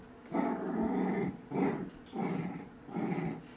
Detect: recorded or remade recorded